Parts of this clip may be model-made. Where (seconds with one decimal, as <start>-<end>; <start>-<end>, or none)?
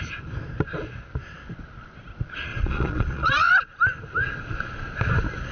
2.5-3.5